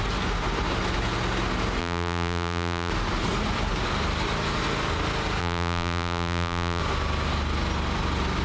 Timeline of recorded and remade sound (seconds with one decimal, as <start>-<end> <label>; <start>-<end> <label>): 0.0-1.8 recorded; 1.8-2.9 remade; 2.9-5.4 recorded; 5.4-6.8 remade; 6.8-8.4 recorded